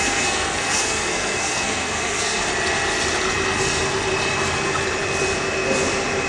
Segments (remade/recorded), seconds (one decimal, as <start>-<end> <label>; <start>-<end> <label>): 0.0-2.4 remade; 2.4-6.3 recorded